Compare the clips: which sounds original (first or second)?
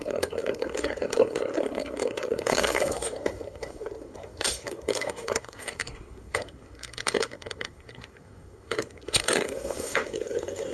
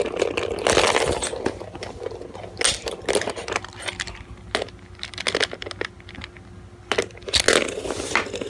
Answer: second